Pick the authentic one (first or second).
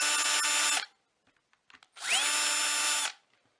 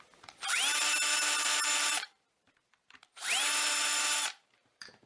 first